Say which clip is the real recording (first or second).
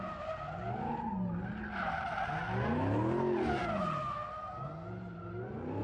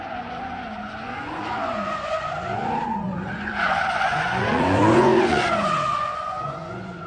first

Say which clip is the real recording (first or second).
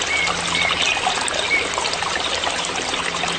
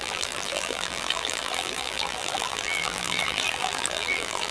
first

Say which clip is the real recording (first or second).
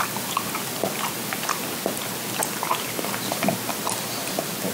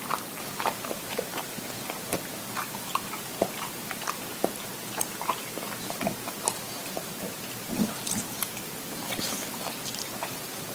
first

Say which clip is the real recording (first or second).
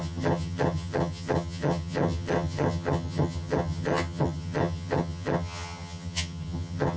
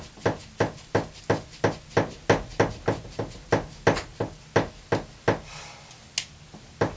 second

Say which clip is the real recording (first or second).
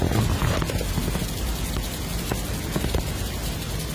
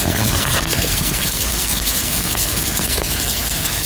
first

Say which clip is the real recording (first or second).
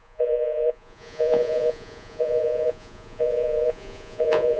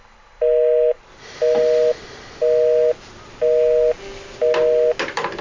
second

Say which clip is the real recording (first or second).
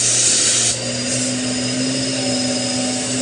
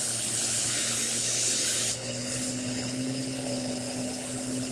first